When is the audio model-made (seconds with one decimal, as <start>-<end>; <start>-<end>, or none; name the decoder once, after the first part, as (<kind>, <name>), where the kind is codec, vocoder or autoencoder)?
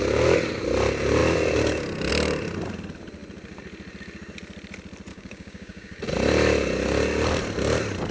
5.1-6.0 (codec, DAC)